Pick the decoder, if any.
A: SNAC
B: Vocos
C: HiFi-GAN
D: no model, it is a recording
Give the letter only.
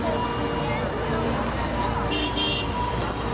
D